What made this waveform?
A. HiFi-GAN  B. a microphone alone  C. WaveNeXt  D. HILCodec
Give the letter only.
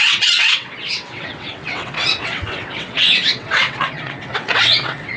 C